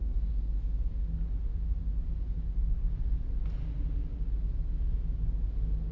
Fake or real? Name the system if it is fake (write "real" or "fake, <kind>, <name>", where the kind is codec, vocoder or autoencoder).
real